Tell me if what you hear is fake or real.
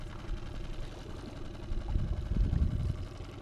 real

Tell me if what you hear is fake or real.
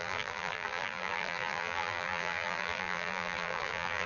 fake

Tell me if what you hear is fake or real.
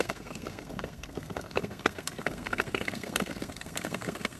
fake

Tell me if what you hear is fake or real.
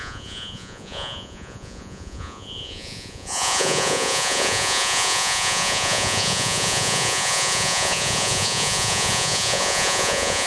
fake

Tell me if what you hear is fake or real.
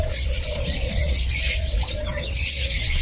fake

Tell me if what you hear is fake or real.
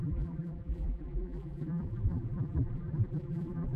fake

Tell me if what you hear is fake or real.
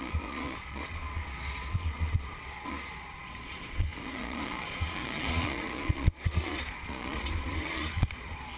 fake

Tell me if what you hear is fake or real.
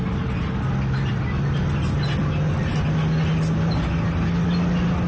real